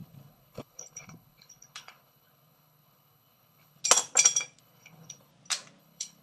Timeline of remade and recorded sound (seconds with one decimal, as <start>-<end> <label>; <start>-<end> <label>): 0.0-3.8 remade; 3.8-4.6 recorded; 4.6-5.3 remade; 5.3-5.8 recorded; 5.8-6.2 remade